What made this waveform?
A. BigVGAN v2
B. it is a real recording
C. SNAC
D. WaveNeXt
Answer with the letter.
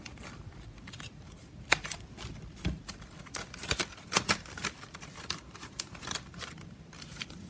A